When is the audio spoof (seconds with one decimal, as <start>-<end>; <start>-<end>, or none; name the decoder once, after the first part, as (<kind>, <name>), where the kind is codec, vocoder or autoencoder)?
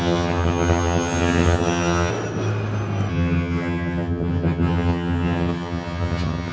0.0-2.1 (vocoder, HiFi-GAN); 3.1-6.5